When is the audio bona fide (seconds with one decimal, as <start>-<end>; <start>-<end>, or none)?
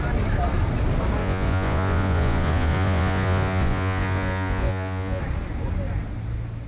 0.0-1.2; 5.2-6.7